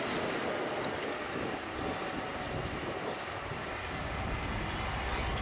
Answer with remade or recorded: recorded